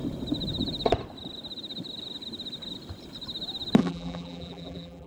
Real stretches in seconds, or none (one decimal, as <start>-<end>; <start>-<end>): 0.0-3.8